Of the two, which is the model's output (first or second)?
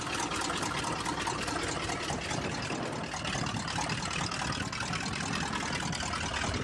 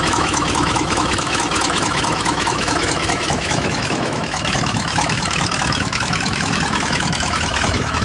second